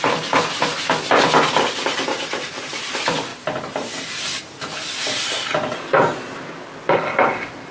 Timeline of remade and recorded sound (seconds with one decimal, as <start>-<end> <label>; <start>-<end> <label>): 0.0-2.1 recorded; 2.1-2.7 remade; 2.7-3.3 recorded; 3.3-4.4 remade; 4.4-7.7 recorded